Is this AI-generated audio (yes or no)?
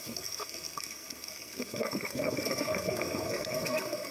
yes